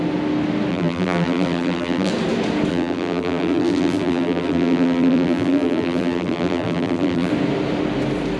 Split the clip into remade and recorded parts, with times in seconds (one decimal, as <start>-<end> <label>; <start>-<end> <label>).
0.0-0.7 recorded; 0.7-2.1 remade; 2.1-2.7 recorded; 2.7-7.3 remade; 7.3-8.4 recorded